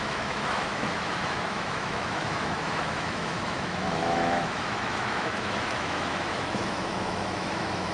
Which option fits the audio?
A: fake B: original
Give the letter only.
A